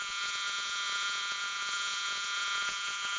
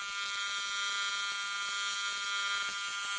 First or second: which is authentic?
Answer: second